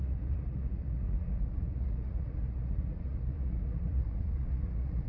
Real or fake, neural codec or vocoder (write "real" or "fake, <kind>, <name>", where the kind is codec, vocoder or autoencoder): fake, vocoder, Vocos